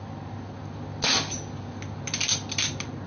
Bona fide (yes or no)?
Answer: yes